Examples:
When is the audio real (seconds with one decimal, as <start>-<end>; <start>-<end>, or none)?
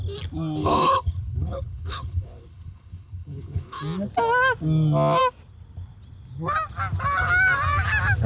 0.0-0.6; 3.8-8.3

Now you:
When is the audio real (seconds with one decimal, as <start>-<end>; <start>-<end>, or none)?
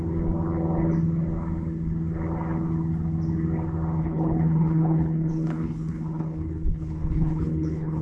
0.0-4.0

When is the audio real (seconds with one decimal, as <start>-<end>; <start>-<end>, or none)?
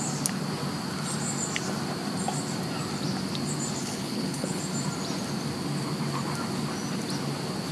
0.0-3.8; 4.6-7.7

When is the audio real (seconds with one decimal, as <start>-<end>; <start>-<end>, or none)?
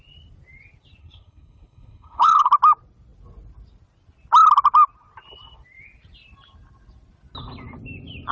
0.0-1.0; 2.5-8.3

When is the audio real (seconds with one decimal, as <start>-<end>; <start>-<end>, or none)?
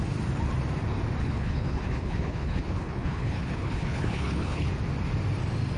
0.0-1.2; 4.7-5.8